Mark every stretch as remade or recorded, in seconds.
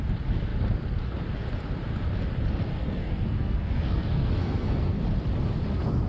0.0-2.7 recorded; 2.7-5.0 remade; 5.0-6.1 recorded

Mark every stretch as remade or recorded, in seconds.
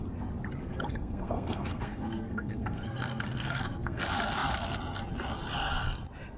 0.0-0.6 recorded; 0.6-4.0 remade; 4.0-6.4 recorded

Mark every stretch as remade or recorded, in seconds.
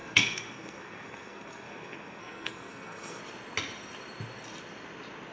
0.0-3.2 remade; 3.2-5.3 recorded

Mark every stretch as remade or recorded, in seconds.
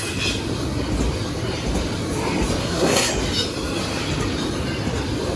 0.0-2.6 recorded; 2.6-3.1 remade; 3.1-5.4 recorded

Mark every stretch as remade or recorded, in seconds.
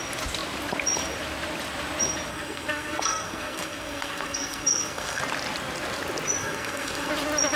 0.0-2.3 recorded; 2.3-5.2 remade; 5.2-6.4 recorded; 6.4-7.1 remade; 7.1-7.6 recorded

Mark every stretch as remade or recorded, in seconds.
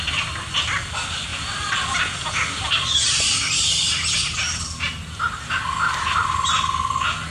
0.0-7.3 recorded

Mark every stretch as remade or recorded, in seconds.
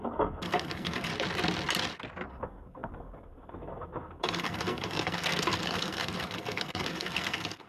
0.0-1.1 remade; 1.1-2.3 recorded; 2.3-7.7 remade